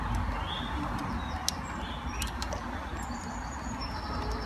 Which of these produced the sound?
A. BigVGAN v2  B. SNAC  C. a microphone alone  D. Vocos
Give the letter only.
C